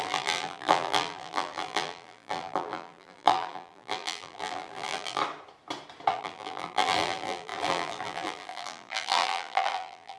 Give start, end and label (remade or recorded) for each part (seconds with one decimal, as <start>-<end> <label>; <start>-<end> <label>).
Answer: 0.0-5.2 remade; 5.2-6.1 recorded; 6.1-10.2 remade